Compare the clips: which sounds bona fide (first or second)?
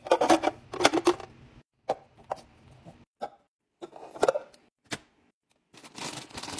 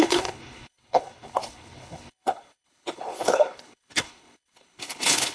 first